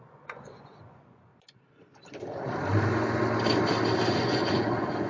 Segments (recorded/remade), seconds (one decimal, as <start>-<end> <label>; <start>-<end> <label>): 0.0-1.3 remade; 1.3-4.1 recorded; 4.1-5.1 remade